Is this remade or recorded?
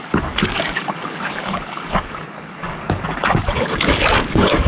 remade